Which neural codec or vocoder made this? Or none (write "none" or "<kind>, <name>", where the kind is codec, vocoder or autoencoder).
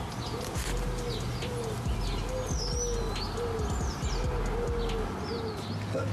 none